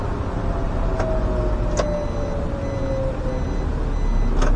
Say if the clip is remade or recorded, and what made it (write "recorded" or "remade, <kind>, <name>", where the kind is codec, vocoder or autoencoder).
recorded